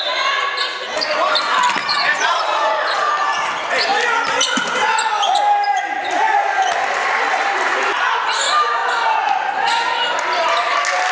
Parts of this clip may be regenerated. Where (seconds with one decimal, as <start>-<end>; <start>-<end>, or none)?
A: 1.8-3.1